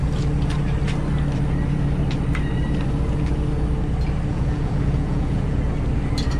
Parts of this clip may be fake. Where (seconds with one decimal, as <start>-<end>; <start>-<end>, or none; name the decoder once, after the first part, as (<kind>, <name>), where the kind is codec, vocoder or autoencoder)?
4.3-5.6 (vocoder, Vocos)